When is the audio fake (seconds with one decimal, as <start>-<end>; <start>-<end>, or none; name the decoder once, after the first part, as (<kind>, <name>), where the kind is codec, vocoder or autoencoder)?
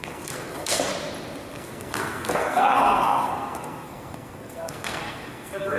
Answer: 0.0-0.9 (codec, SNAC); 1.5-5.8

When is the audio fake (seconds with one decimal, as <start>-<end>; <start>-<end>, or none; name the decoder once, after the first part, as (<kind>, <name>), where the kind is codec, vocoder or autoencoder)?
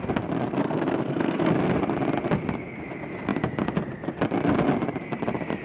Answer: 0.6-1.5 (codec, SNAC)